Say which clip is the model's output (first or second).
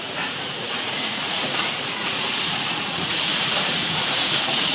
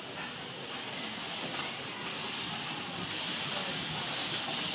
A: first